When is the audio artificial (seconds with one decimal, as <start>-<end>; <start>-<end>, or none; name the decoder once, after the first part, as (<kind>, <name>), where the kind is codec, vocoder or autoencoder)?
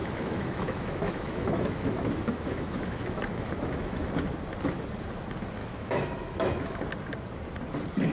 0.0-4.1 (autoencoder, DAC-VAE); 5.6-6.8